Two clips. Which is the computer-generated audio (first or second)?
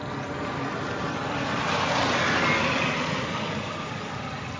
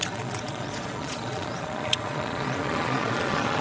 second